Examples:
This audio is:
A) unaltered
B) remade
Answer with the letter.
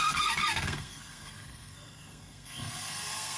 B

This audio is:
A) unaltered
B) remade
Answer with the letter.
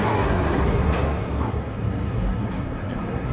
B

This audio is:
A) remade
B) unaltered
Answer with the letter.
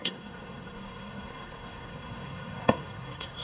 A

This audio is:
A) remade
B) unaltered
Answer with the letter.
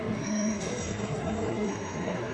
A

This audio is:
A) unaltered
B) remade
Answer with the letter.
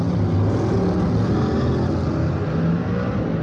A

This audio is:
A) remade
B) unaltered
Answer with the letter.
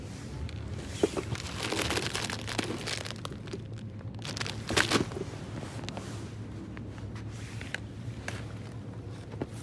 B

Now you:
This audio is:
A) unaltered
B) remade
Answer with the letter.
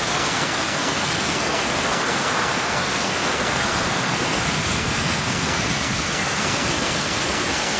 B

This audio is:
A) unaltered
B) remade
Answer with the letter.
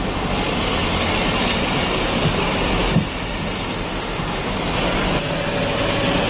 A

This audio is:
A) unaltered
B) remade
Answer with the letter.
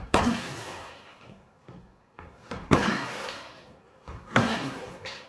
B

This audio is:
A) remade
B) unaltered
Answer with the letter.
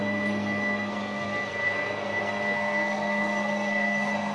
A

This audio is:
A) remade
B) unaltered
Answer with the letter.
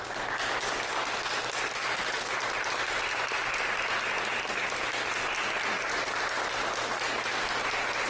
B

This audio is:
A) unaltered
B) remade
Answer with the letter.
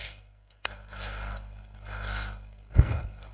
B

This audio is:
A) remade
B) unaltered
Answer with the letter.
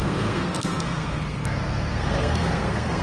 A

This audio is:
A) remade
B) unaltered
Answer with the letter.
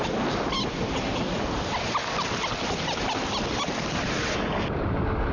B